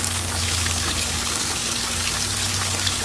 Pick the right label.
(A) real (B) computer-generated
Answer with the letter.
B